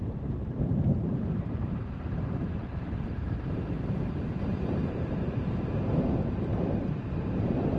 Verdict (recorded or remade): remade